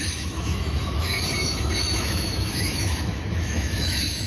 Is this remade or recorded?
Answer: remade